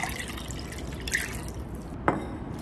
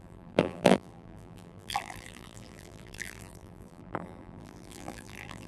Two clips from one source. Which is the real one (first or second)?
first